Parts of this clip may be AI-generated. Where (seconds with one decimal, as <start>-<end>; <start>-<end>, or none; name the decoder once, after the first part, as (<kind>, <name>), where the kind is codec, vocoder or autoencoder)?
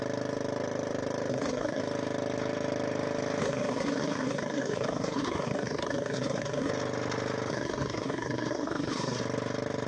1.3-1.8 (codec, SNAC); 3.4-6.7; 7.5-9.2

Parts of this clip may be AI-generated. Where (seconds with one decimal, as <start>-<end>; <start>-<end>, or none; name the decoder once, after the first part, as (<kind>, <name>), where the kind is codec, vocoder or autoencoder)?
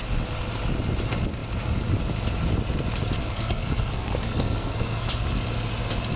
3.2-5.1 (codec, SNAC)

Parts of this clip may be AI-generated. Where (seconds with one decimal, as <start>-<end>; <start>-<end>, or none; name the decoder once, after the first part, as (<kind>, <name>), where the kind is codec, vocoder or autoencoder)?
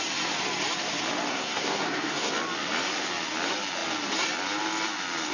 1.3-2.3 (codec, SNAC)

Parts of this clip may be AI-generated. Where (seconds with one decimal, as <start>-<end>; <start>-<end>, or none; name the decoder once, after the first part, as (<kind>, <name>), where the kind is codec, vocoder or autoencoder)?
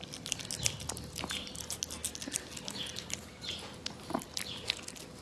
none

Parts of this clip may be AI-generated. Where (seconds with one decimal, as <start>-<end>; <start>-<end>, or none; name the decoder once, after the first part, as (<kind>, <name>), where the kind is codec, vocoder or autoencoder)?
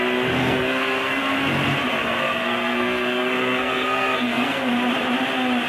0.4-1.2 (codec, SNAC); 2.0-4.7